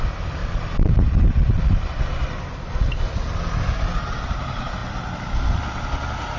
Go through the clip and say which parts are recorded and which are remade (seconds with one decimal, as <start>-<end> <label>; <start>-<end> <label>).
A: 0.0-6.4 recorded